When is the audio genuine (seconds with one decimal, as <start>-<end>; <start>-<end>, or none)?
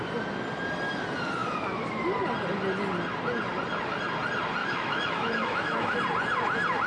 0.0-4.6; 6.0-6.9